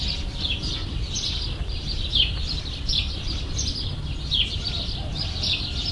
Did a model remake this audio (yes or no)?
yes